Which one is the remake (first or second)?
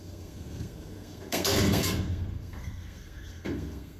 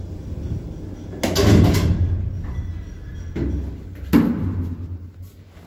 first